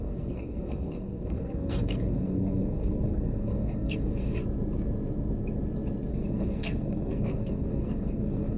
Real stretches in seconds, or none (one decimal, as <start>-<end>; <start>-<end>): 4.4-6.1